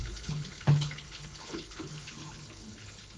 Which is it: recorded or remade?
remade